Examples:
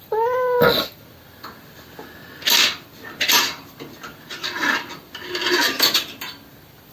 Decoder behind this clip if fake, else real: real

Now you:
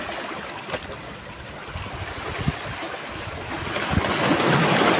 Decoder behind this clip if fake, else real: real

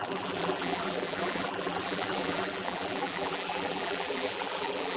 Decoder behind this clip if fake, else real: fake, vocoder, BigVGAN v2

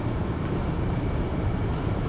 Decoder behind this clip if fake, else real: real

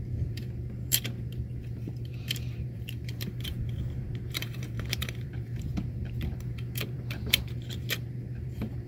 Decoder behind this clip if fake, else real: fake, vocoder, BigVGAN v2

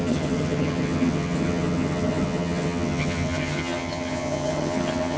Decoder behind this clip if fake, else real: fake, vocoder, HiFi-GAN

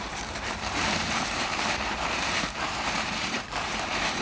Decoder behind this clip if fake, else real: fake, vocoder, BigVGAN v2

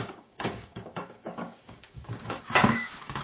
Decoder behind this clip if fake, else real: fake, codec, DAC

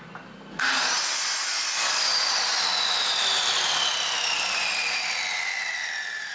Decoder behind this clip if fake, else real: real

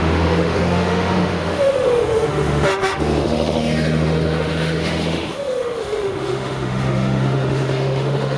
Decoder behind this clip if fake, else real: fake, autoencoder, DAC-VAE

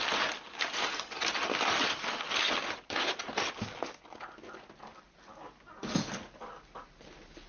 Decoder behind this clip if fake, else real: real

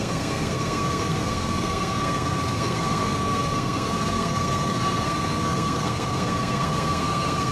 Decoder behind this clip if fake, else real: fake, codec, SNAC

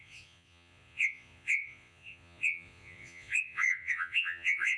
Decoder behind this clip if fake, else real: fake, vocoder, Vocos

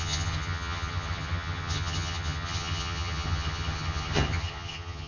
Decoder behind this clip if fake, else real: fake, vocoder, HiFi-GAN